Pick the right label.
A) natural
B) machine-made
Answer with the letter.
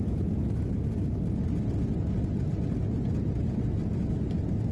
A